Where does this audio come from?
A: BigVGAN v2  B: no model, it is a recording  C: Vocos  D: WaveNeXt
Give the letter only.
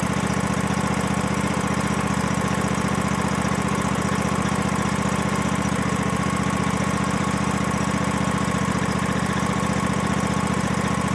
A